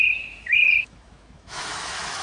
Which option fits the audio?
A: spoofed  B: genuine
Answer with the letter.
A